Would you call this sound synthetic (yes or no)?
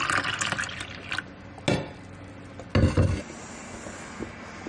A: no